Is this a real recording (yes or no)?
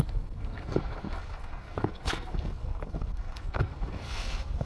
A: no